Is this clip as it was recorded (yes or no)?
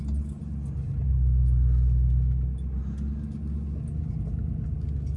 yes